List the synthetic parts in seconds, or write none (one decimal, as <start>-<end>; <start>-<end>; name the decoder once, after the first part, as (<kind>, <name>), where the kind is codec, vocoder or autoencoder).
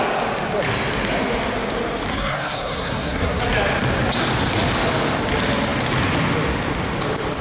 2.1-3.4 (codec, SNAC)